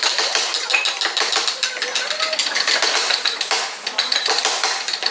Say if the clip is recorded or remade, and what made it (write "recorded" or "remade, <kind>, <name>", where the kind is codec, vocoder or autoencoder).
recorded